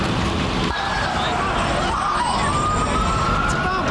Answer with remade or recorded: recorded